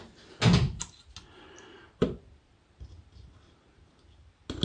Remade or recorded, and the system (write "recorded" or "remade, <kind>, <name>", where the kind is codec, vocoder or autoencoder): recorded